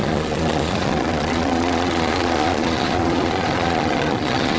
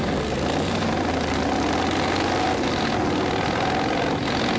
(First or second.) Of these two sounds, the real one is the second